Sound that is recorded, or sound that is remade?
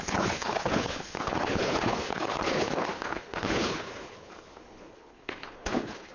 remade